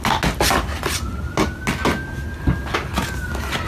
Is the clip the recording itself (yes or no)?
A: yes